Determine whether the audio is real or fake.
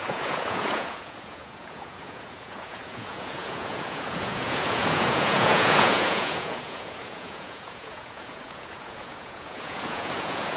fake